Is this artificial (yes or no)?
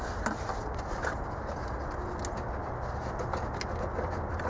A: no